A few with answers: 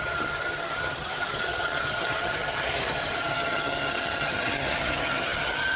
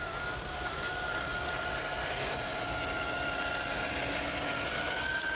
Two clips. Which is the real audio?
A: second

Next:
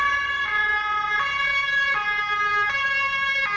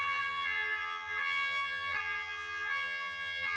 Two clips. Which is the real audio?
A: first